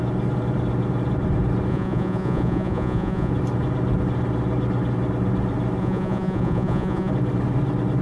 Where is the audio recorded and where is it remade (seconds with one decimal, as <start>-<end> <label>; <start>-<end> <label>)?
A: 0.0-1.7 recorded; 1.7-3.3 remade; 3.3-5.8 recorded; 5.8-7.1 remade; 7.1-8.0 recorded